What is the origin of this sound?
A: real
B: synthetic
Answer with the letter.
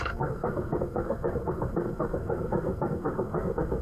B